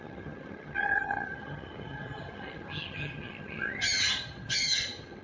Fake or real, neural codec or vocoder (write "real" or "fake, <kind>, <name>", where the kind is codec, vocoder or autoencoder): fake, vocoder, HiFi-GAN